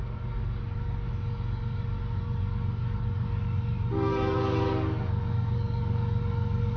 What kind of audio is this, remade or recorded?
remade